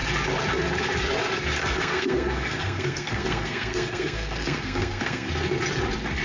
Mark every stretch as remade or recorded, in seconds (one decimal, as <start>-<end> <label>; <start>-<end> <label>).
0.0-1.6 recorded; 1.6-5.3 remade; 5.3-6.2 recorded